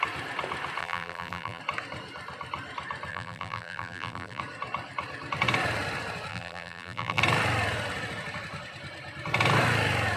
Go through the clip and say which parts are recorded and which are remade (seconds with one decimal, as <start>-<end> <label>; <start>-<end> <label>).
0.0-0.8 recorded; 0.8-1.6 remade; 1.6-3.1 recorded; 3.1-4.4 remade; 4.4-6.3 recorded; 6.3-7.2 remade; 7.2-10.2 recorded